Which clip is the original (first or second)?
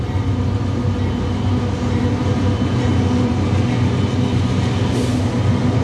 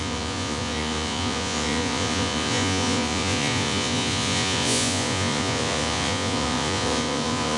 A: first